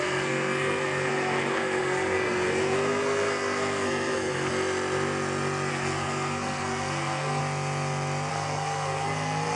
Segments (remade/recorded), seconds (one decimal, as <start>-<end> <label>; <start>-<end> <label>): 0.0-4.5 remade; 4.5-5.7 recorded; 5.7-7.4 remade; 7.4-8.3 recorded; 8.3-9.6 remade